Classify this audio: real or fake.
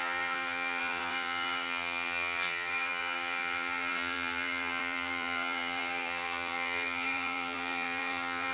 fake